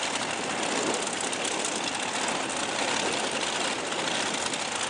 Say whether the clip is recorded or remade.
recorded